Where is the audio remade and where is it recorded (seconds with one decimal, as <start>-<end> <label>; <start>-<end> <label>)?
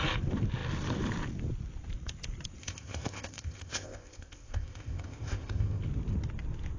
0.0-2.6 recorded; 2.6-5.8 remade; 5.8-6.8 recorded